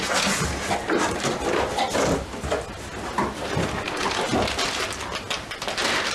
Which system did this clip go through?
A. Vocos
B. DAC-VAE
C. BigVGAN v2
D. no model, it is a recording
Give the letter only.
D